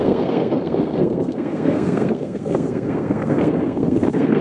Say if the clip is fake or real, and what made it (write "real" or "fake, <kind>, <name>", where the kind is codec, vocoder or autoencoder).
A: fake, codec, SNAC